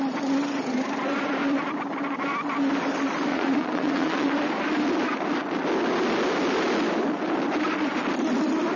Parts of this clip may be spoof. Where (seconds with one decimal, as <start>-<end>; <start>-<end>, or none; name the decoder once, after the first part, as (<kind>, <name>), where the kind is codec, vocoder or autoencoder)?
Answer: 3.3-4.3 (vocoder, Vocos)